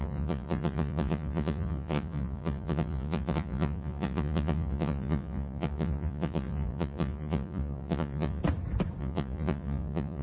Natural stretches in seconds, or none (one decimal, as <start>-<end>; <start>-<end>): 8.4-9.0